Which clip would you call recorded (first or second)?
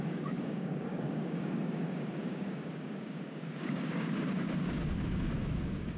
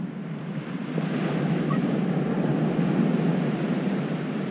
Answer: second